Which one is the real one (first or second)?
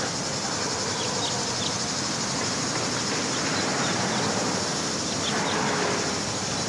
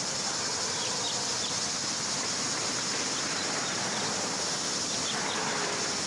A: first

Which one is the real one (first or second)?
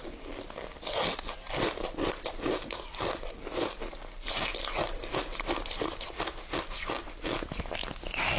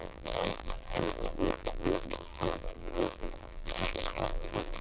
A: first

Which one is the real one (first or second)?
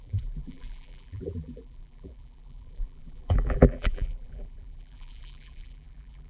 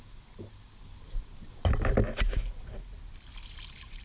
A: second